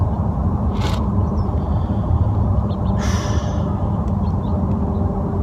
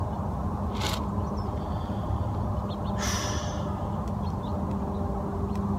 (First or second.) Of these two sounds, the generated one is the first